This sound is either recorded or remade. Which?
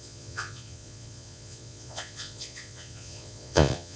remade